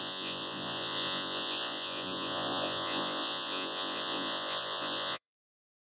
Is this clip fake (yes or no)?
yes